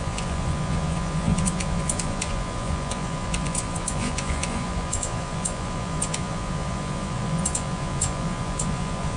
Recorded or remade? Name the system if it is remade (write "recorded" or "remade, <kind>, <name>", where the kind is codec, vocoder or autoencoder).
remade, vocoder, Vocos